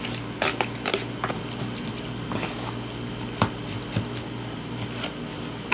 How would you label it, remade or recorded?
recorded